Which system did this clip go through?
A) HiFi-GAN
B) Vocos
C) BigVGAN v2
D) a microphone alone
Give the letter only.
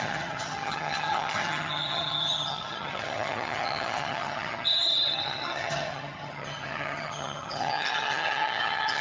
A